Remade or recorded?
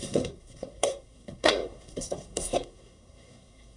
remade